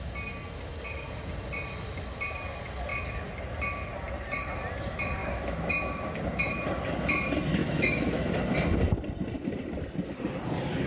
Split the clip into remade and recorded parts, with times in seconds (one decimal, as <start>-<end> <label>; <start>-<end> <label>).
0.0-5.2 recorded; 5.2-5.7 remade; 5.7-7.6 recorded; 7.6-8.3 remade; 8.3-10.9 recorded

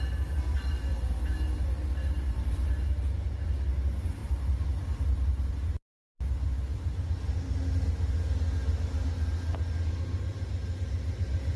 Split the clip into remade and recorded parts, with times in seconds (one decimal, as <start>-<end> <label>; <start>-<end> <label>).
0.0-11.6 recorded

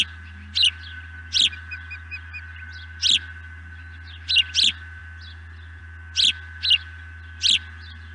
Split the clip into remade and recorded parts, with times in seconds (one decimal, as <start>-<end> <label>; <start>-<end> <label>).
0.0-8.1 recorded

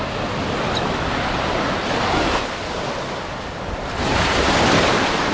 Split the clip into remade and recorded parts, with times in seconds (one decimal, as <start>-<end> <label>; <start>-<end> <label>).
0.0-5.3 recorded

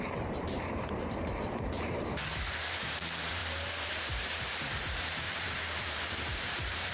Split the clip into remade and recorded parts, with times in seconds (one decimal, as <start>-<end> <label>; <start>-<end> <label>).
0.0-6.9 remade

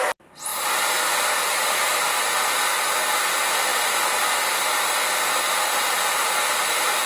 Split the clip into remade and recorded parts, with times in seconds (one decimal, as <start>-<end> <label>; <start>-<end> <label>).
0.0-0.5 recorded; 0.5-2.3 remade; 2.3-7.1 recorded